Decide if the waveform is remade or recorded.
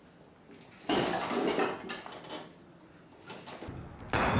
recorded